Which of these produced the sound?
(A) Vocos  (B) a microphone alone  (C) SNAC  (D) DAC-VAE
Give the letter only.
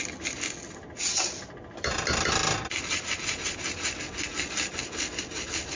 B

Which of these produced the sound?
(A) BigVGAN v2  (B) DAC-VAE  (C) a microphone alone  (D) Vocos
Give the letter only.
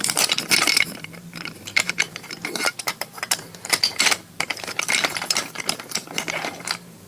A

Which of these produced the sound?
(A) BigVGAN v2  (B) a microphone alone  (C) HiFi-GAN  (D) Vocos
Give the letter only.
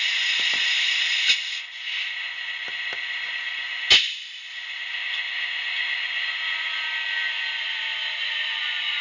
B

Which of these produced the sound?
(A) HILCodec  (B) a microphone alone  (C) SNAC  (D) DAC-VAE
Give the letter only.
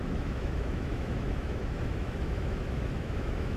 D